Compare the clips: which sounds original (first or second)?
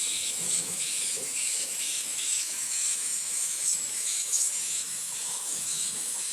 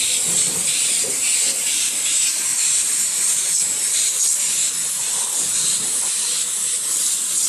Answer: second